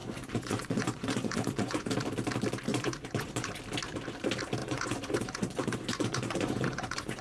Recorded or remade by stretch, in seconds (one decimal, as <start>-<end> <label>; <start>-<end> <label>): 0.0-1.9 remade; 1.9-2.7 recorded; 2.7-3.5 remade; 3.5-4.6 recorded; 4.6-7.2 remade